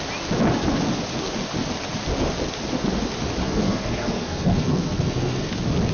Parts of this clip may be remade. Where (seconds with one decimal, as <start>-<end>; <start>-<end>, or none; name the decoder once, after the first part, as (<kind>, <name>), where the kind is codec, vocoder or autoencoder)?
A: 3.4-5.5 (codec, SNAC)